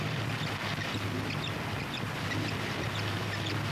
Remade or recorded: recorded